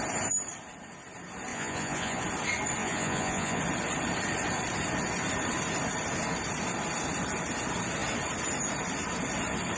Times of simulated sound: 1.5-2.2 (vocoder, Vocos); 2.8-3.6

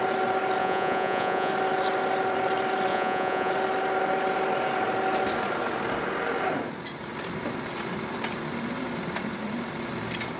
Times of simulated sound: 0.6-1.5 (vocoder, Vocos); 2.9-3.5

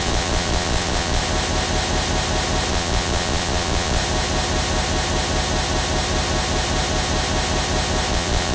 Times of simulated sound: 0.0-1.2 (vocoder, Vocos); 2.7-4.0; 8.1-8.5

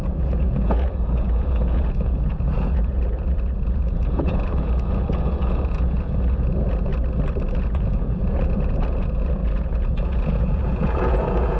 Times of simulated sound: 0.0-6.9 (vocoder, Vocos); 7.5-11.6